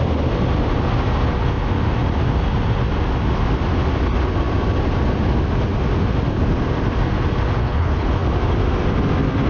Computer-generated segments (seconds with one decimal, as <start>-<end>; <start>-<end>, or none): 7.6-8.1